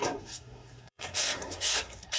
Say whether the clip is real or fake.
fake